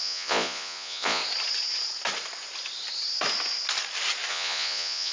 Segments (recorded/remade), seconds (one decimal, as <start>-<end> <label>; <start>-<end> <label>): 0.0-1.2 remade; 1.2-4.3 recorded; 4.3-5.1 remade